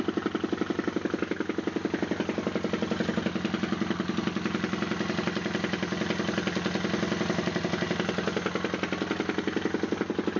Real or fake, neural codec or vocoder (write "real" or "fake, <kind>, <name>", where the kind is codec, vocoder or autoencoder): real